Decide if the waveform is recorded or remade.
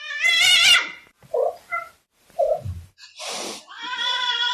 remade